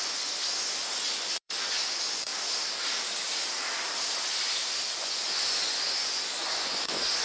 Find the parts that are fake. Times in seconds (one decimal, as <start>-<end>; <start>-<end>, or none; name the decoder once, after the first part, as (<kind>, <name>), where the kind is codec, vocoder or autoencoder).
0.0-2.3 (vocoder, Vocos); 4.9-7.2